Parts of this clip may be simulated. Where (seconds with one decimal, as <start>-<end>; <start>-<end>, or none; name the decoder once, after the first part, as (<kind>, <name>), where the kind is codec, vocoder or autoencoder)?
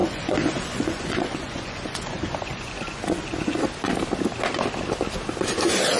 0.0-3.6 (vocoder, Vocos)